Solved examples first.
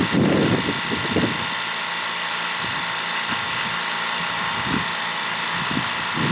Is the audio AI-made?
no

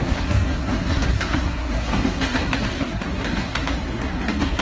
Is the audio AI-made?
yes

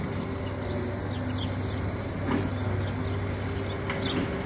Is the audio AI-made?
no